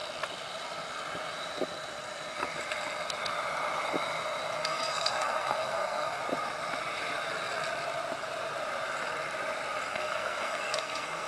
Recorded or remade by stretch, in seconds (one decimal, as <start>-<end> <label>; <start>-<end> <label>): 0.0-4.6 recorded; 4.6-6.2 remade; 6.2-9.9 recorded; 9.9-11.3 remade